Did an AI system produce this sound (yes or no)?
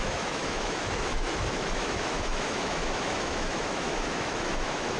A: yes